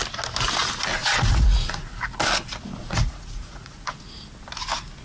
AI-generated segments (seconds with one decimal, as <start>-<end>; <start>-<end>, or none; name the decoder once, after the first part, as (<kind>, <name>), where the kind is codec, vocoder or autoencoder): 1.0-2.0 (vocoder, Vocos); 2.8-4.0